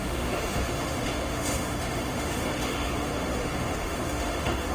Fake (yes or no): yes